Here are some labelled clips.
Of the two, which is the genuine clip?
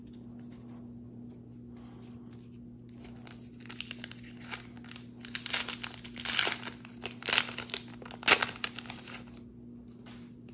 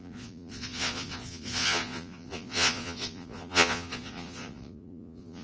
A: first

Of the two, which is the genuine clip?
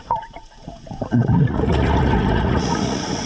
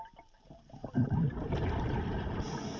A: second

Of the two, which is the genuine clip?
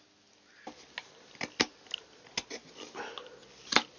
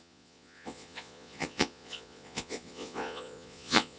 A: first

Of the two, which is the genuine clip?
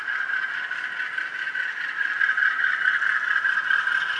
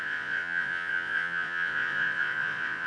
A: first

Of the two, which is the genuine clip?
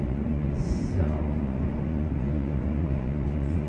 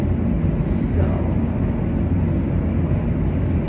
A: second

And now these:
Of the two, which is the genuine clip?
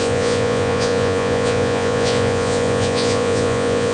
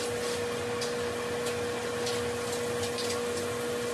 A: second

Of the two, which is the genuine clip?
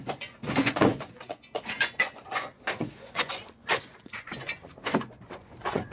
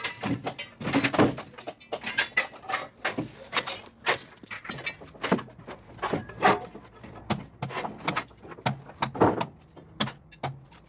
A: second